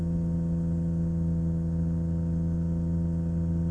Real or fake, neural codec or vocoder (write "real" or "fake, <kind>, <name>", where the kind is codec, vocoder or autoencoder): real